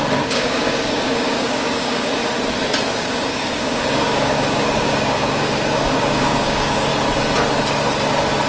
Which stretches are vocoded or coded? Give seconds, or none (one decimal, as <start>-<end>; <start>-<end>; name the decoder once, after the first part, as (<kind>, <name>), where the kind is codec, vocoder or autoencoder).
0.0-2.2 (codec, DAC); 2.8-6.9

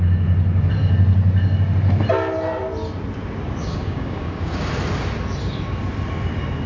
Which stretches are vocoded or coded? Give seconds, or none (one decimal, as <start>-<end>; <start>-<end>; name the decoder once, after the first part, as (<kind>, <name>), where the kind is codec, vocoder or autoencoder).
3.6-4.5 (codec, DAC)

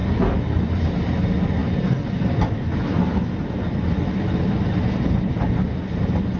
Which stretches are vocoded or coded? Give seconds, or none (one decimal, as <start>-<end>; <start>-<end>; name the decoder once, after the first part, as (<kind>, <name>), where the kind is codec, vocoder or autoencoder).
none

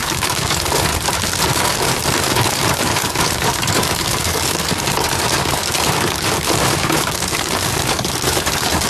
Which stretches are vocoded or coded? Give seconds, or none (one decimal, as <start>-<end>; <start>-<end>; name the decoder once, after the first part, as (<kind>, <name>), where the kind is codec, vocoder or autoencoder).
0.0-0.9 (codec, DAC); 1.5-8.9

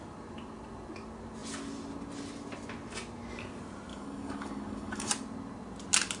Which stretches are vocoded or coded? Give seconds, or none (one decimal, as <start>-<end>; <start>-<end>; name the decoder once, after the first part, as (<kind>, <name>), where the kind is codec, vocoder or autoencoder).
3.9-5.1 (codec, DAC)